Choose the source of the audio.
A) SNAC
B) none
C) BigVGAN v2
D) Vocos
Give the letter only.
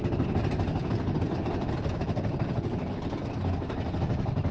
C